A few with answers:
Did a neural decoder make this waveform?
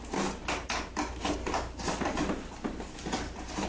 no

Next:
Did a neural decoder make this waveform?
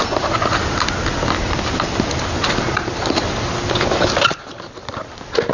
no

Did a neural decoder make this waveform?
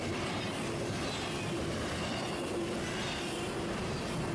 no